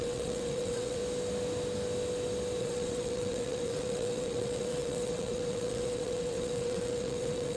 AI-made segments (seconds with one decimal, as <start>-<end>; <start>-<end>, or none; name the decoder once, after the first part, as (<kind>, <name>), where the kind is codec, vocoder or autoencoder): 0.0-1.0 (vocoder, WaveNeXt); 2.6-7.6